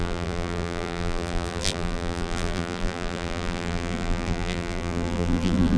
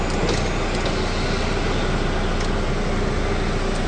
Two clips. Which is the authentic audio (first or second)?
second